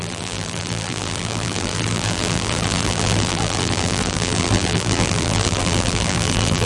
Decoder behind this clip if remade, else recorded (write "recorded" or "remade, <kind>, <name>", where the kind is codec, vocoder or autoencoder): remade, vocoder, BigVGAN v2